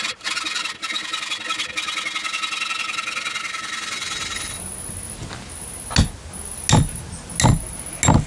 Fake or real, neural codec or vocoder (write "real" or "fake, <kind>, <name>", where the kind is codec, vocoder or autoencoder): real